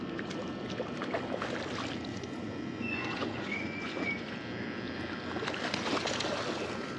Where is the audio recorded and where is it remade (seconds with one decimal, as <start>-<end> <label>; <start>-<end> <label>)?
0.0-2.1 recorded; 2.1-4.3 remade; 4.3-7.0 recorded